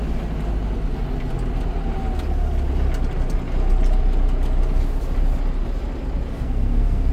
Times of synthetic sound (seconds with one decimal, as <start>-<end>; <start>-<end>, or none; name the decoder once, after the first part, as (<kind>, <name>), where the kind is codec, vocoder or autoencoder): 6.3-7.1 (codec, SNAC)